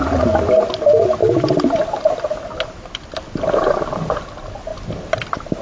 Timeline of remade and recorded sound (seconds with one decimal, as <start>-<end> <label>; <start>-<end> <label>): 0.0-5.6 recorded